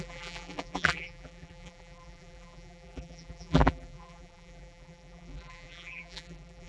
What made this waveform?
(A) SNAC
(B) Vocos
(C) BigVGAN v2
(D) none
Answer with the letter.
C